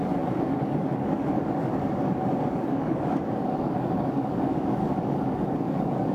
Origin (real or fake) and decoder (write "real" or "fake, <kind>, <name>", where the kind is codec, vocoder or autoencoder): fake, codec, DAC